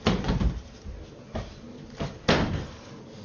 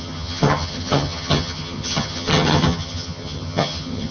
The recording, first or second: first